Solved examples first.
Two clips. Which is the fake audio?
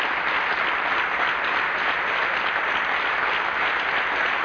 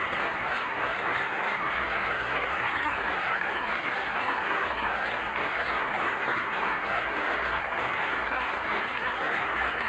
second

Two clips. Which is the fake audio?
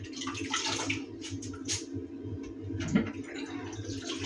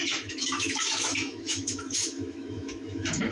second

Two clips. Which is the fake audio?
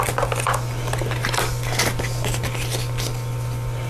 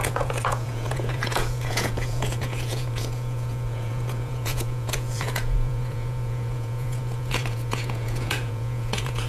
second